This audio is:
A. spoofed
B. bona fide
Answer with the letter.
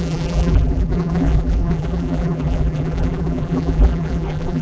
A